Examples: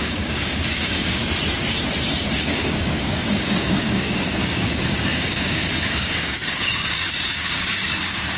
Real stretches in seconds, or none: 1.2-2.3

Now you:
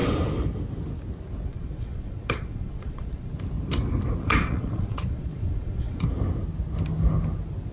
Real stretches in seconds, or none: 0.0-1.5; 3.3-4.2; 6.0-7.7

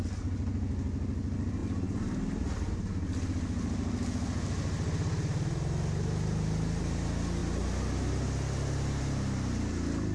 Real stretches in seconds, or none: 0.0-10.1

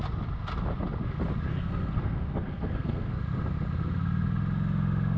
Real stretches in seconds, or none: 0.0-1.5; 3.1-5.2

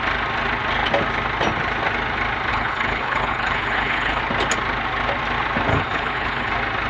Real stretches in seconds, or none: 0.0-2.5; 4.2-5.7; 6.5-6.9

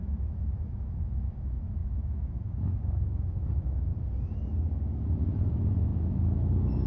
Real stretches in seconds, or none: 3.9-5.3